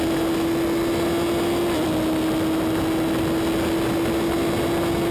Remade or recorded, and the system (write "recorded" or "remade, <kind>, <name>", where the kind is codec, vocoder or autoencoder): recorded